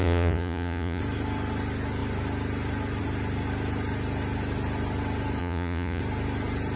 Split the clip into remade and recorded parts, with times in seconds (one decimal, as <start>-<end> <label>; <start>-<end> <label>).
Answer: 0.0-1.0 remade; 1.0-5.4 recorded; 5.4-6.0 remade; 6.0-6.8 recorded